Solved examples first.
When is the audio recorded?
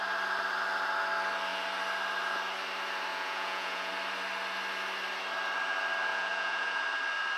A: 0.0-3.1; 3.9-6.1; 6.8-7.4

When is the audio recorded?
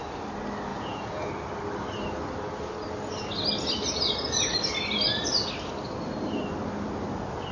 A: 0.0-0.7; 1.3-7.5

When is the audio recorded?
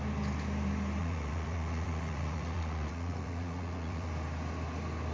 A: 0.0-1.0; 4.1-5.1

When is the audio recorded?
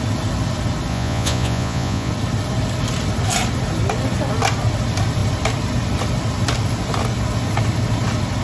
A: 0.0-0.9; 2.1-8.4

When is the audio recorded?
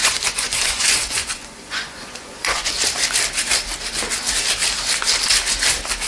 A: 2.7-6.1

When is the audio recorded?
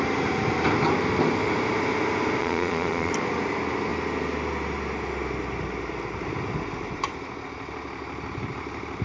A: 0.0-2.4; 3.1-9.0